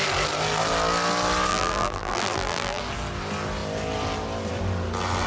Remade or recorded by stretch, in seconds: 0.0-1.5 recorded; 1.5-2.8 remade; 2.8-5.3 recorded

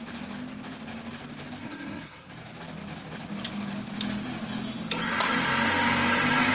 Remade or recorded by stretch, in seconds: 0.0-1.6 recorded; 1.6-2.3 remade; 2.3-6.5 recorded

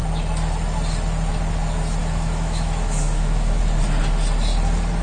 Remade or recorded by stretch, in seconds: 0.0-2.0 recorded; 2.0-3.6 remade; 3.6-5.0 recorded

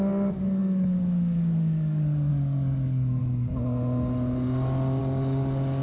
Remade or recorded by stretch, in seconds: 0.0-3.2 remade; 3.2-5.0 recorded; 5.0-5.8 remade

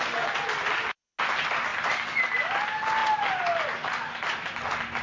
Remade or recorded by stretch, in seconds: 0.0-5.0 recorded